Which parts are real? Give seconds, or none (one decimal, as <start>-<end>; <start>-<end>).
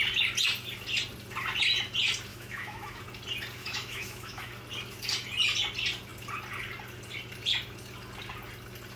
0.0-2.3; 3.0-3.6; 4.5-9.0